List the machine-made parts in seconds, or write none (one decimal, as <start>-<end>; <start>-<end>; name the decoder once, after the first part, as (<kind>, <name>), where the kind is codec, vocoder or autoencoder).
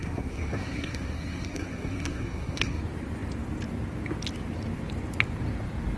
0.0-2.8 (codec, SNAC)